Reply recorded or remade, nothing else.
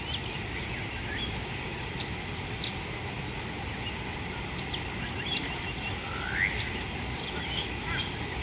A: recorded